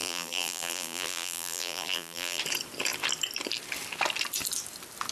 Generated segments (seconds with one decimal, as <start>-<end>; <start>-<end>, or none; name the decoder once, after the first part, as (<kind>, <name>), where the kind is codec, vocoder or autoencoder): 0.0-2.4 (vocoder, BigVGAN v2)